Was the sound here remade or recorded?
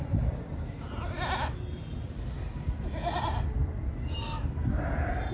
recorded